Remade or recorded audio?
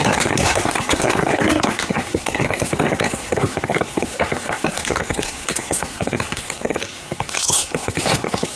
remade